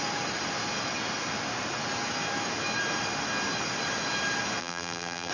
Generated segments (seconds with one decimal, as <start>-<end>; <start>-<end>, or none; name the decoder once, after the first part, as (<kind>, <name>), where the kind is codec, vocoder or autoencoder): 4.6-5.3 (vocoder, BigVGAN v2)